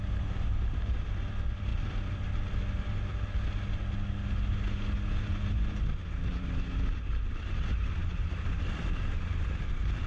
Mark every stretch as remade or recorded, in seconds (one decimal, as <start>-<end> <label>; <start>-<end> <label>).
0.0-1.7 recorded; 1.7-2.5 remade; 2.5-6.3 recorded; 6.3-7.0 remade; 7.0-8.0 recorded; 8.0-8.6 remade; 8.6-10.1 recorded

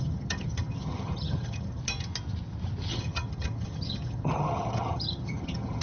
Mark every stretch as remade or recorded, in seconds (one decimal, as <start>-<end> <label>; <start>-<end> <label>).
0.0-1.8 remade; 1.8-2.9 recorded; 2.9-5.8 remade

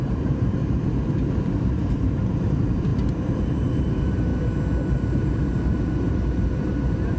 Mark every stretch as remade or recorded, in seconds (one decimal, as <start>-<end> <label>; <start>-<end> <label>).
0.0-0.6 remade; 0.6-1.6 recorded; 1.6-4.3 remade; 4.3-4.9 recorded; 4.9-7.2 remade

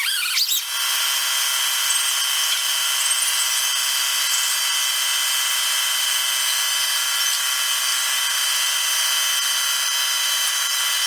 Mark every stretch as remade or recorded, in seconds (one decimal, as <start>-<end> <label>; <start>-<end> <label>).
0.0-11.1 recorded